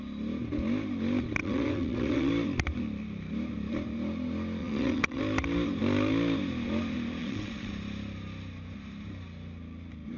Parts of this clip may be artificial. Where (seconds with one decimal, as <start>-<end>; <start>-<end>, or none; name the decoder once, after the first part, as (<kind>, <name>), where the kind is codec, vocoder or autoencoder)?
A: 1.4-2.3 (vocoder, WaveNeXt); 4.6-5.2; 7.2-7.7